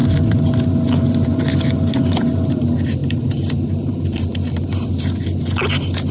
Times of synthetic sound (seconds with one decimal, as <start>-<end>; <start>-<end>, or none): 3.0-4.9

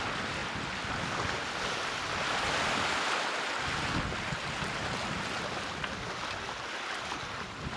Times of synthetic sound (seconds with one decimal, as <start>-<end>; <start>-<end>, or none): none

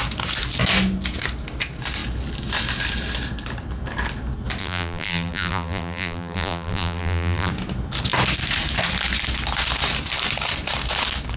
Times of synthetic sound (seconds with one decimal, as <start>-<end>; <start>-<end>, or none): 4.6-7.5

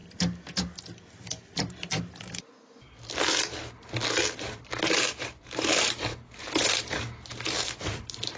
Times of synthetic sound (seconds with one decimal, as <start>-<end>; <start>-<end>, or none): 4.7-8.4

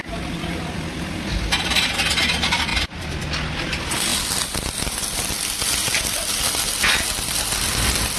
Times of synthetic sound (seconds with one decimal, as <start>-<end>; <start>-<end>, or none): 0.0-4.1; 5.4-8.2

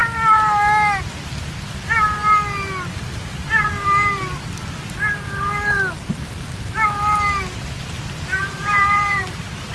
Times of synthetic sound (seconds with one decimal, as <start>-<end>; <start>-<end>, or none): 8.4-9.7

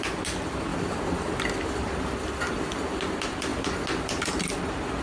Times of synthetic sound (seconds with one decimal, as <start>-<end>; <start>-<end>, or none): 0.7-1.4